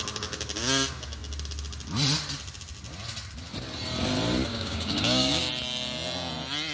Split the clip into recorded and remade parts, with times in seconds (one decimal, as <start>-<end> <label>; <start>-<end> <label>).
0.0-4.5 recorded; 4.5-5.5 remade; 5.5-6.7 recorded